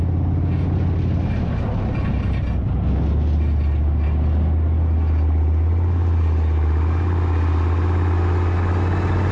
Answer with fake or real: real